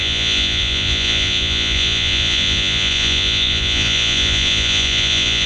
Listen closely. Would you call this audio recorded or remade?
remade